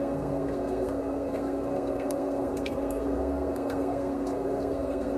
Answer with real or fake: fake